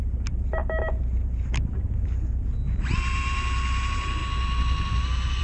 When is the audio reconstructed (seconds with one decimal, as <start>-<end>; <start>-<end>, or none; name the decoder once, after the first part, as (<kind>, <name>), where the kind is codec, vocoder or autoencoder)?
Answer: none